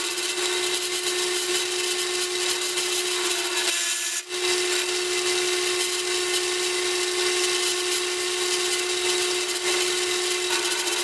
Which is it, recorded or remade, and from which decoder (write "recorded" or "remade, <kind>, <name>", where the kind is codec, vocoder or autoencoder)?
recorded